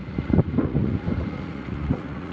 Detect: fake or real fake